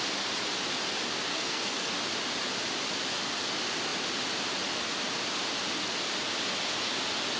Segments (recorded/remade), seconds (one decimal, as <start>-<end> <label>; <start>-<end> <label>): 0.0-1.3 recorded; 1.3-1.9 remade; 1.9-7.4 recorded